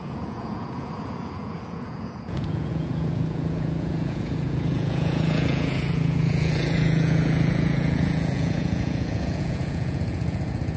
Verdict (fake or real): fake